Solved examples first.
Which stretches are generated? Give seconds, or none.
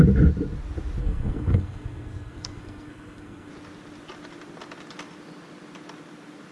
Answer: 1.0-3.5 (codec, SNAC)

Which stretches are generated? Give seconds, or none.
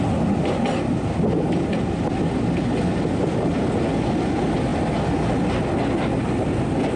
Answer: none